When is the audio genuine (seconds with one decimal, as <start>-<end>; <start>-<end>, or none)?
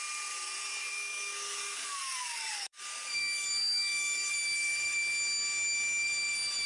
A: 0.0-0.8; 2.8-3.2; 4.3-6.7